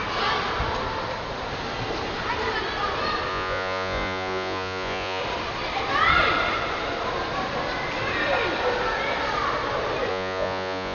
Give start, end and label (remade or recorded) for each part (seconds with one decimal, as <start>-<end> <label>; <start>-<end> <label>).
0.0-3.3 recorded; 3.3-5.2 remade; 5.2-10.1 recorded; 10.1-10.9 remade